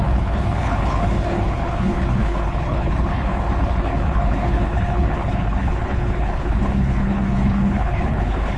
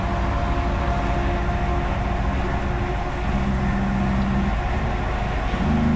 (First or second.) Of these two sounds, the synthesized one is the first